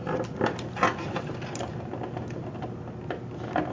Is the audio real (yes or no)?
yes